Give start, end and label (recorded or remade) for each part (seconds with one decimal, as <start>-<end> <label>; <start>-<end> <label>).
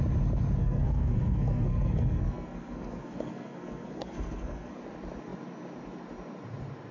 0.0-0.6 recorded; 0.6-4.7 remade; 4.7-6.9 recorded